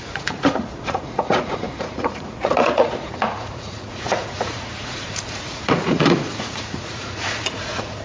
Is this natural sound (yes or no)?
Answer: no